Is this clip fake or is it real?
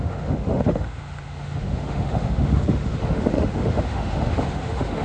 fake